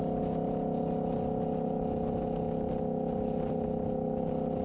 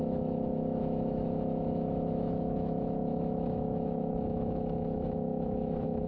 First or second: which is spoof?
second